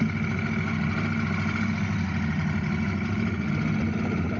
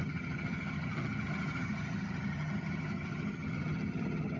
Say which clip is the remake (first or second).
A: second